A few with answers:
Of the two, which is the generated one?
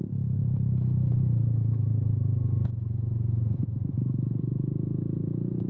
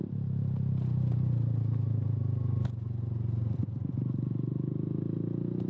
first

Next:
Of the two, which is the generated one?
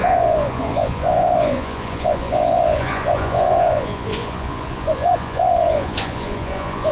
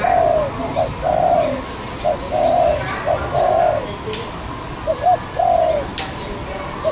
first